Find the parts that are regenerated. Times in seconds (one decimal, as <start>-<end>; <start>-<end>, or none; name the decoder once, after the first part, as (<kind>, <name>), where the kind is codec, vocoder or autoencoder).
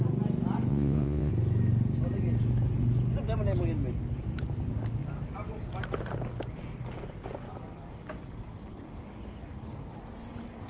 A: 0.7-1.3 (vocoder, Vocos)